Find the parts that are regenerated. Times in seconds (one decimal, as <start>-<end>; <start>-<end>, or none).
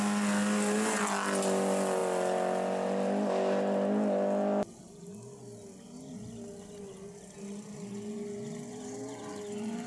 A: none